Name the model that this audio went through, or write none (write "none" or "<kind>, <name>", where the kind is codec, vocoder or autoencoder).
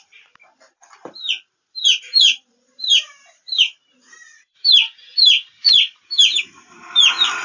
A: vocoder, BigVGAN v2